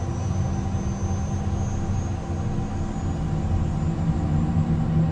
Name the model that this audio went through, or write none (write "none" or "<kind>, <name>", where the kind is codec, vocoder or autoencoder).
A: none